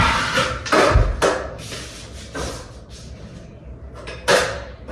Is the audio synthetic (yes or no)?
no